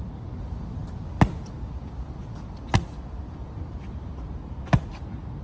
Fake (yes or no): no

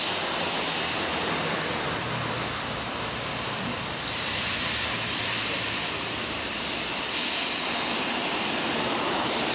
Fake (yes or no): yes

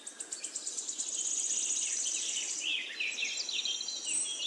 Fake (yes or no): no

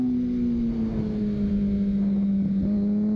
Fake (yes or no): no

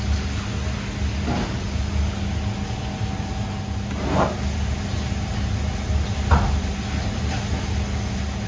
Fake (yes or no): no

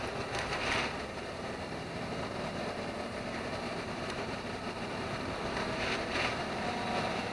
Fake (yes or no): yes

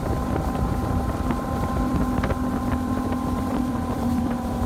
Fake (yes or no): yes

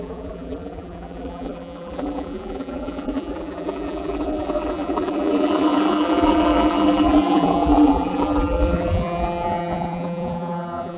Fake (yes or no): yes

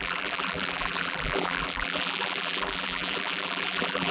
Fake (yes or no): yes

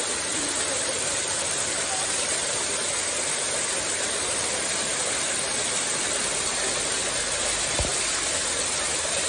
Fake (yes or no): no